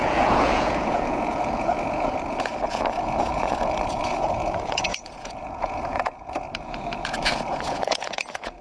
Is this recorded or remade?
remade